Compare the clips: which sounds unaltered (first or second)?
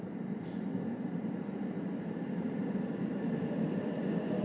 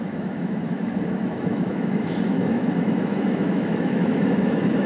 first